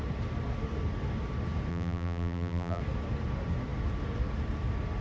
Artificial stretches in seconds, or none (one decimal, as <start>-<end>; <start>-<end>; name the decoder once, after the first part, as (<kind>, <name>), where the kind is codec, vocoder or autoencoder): 1.7-2.8 (vocoder, BigVGAN v2)